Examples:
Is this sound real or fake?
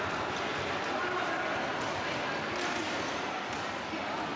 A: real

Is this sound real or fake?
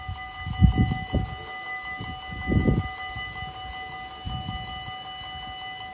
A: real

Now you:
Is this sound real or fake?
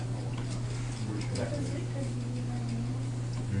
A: real